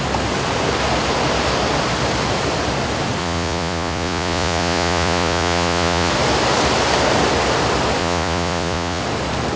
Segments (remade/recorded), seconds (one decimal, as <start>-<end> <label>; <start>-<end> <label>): 0.0-3.2 recorded; 3.2-6.1 remade; 6.1-8.0 recorded; 8.0-9.0 remade; 9.0-9.6 recorded